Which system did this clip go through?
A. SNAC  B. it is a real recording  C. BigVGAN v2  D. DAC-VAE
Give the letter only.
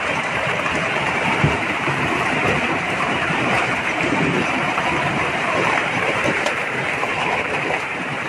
C